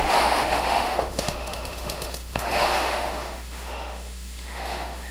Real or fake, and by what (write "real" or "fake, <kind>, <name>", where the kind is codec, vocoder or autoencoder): fake, autoencoder, DAC-VAE